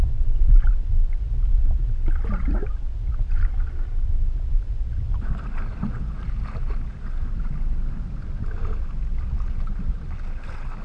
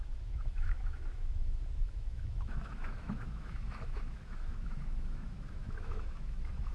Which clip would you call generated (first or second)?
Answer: second